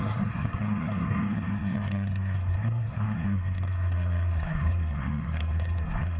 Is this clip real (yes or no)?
no